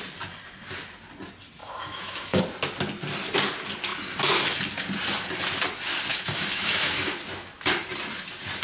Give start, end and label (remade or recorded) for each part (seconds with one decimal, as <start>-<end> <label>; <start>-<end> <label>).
0.0-1.6 recorded; 1.6-2.4 remade; 2.4-6.1 recorded; 6.1-7.1 remade; 7.1-8.6 recorded